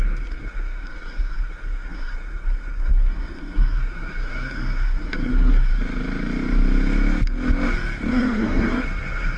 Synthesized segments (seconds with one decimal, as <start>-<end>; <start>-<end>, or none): 0.0-5.7; 8.1-9.4